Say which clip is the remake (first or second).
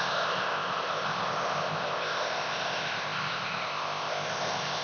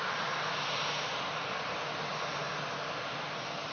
first